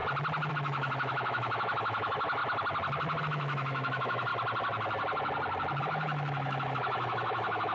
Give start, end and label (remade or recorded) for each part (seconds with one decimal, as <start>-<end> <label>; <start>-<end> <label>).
0.0-0.5 recorded; 0.5-2.4 remade; 2.4-3.2 recorded; 3.2-4.3 remade; 4.3-5.8 recorded; 5.8-7.7 remade